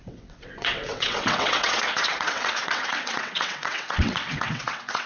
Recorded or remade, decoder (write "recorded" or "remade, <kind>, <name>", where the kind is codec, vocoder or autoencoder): remade, vocoder, WaveNeXt